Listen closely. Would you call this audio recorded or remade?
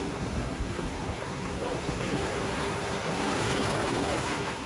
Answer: remade